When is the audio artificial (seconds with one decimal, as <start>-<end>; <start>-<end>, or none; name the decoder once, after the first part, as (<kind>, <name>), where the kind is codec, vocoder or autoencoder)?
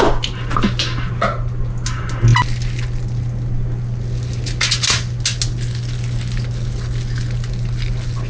none